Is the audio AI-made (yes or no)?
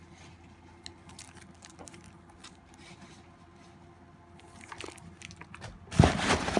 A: no